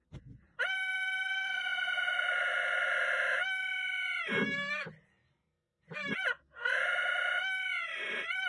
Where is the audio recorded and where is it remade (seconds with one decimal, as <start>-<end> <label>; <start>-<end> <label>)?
0.0-1.7 remade; 1.7-2.3 recorded; 2.3-3.0 remade; 3.0-8.1 recorded; 8.1-8.5 remade